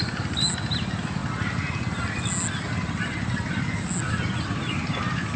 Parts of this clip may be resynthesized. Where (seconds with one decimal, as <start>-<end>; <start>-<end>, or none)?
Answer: none